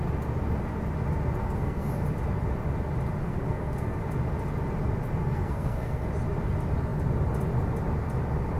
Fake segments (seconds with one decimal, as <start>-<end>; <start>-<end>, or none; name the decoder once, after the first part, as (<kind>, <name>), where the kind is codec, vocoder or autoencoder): 1.4-1.9 (codec, SNAC); 3.2-4.0; 5.2-6.1